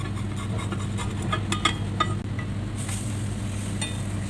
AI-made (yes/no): no